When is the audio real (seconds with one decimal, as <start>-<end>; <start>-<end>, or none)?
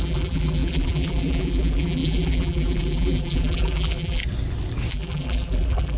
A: 4.2-4.9